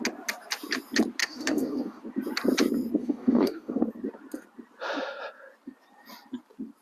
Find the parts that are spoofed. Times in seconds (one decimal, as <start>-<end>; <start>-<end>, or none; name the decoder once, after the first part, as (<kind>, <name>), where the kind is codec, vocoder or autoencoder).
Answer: 1.2-2.0 (codec, DAC); 3.0-3.8